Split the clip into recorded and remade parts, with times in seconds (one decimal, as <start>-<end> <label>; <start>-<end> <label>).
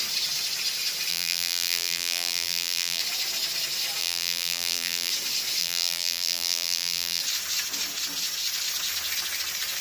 0.0-1.1 recorded; 1.1-3.0 remade; 3.0-4.0 recorded; 4.0-5.1 remade; 5.1-5.6 recorded; 5.6-7.2 remade; 7.2-9.8 recorded